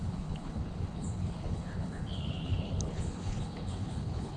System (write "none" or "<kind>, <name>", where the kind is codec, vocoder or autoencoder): codec, HILCodec